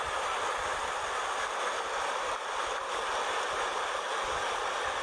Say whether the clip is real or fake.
real